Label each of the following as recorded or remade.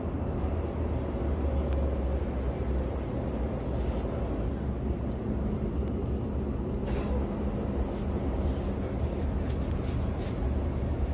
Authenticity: recorded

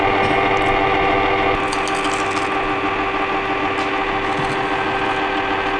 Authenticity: recorded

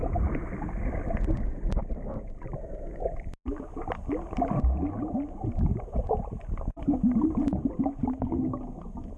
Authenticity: recorded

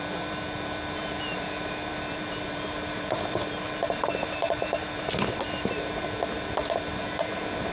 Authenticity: remade